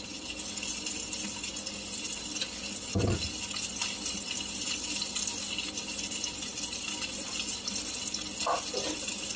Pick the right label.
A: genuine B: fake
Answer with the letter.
A